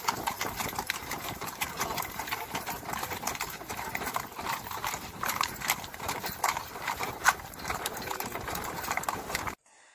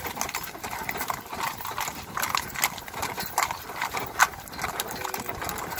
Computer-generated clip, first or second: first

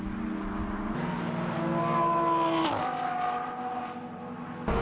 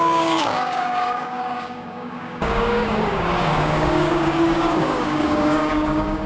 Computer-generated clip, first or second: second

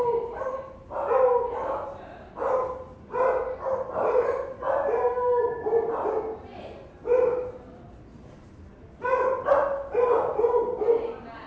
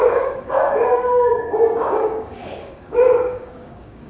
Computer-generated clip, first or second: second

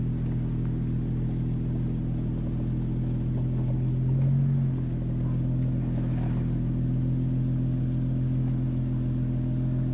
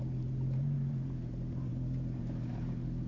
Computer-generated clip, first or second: second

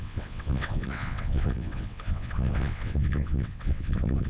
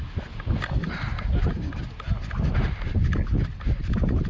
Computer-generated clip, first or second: first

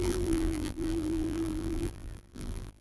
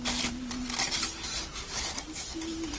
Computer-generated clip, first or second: first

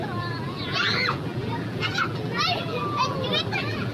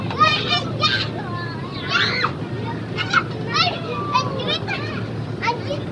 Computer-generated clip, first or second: first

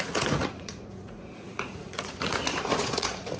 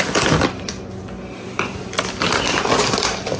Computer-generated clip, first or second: first